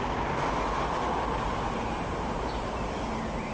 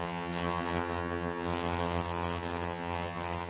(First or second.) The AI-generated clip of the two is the second